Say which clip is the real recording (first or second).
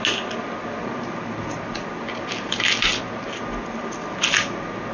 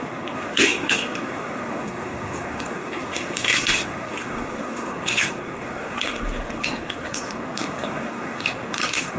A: first